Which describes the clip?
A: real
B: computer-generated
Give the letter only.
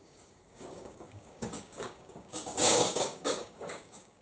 B